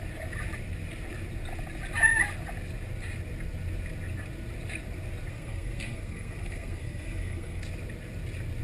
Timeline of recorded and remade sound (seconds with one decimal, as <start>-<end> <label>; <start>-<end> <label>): 0.0-5.3 recorded; 5.3-7.6 remade; 7.6-8.6 recorded